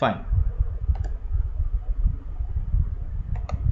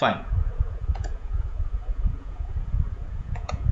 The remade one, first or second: second